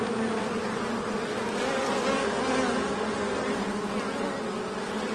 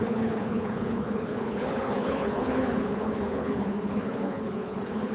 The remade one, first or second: second